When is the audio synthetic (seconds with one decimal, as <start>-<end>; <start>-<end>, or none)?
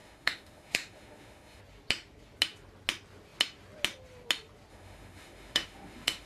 0.0-1.6; 4.7-6.3